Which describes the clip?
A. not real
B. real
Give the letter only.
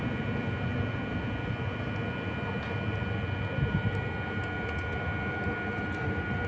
B